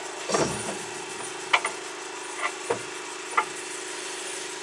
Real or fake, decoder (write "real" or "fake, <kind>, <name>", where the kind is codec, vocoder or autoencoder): real